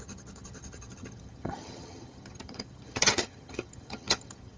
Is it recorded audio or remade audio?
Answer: remade